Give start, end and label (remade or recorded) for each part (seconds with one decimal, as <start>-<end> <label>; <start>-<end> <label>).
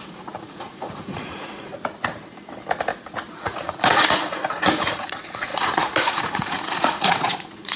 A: 0.0-1.7 remade; 1.7-3.3 recorded; 3.3-7.8 remade